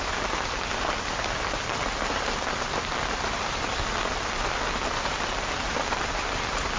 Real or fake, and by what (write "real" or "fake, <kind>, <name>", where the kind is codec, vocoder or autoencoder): real